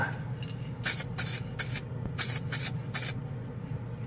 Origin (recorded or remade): recorded